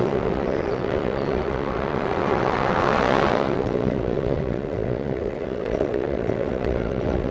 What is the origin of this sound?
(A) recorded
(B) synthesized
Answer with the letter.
B